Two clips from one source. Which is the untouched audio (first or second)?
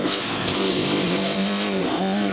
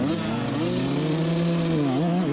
second